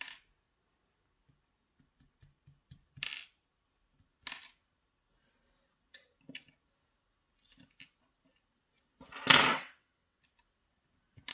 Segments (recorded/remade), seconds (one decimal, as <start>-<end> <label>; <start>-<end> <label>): 0.0-9.5 recorded; 9.5-10.2 remade; 10.2-11.3 recorded